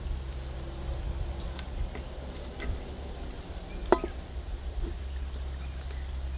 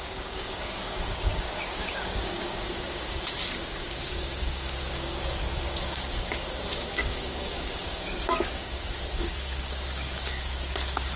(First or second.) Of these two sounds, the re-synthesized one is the second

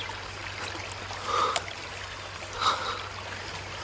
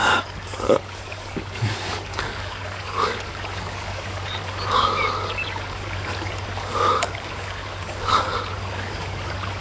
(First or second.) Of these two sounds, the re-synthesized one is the second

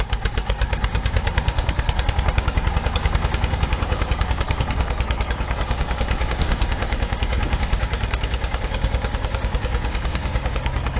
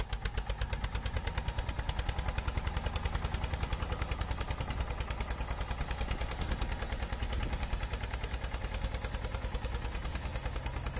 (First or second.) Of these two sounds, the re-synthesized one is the first